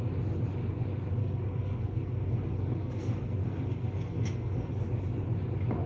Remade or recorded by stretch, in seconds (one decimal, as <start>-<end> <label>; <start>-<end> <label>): 0.0-1.2 recorded; 1.2-4.7 remade; 4.7-5.9 recorded